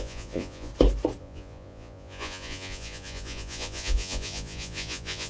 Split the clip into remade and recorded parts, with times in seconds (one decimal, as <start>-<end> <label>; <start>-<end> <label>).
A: 0.0-0.7 remade; 0.7-1.2 recorded; 1.2-5.3 remade